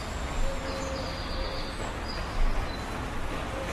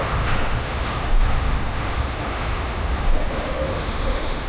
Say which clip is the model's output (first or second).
second